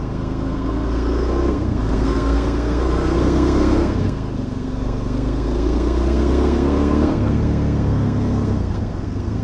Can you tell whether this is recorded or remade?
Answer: remade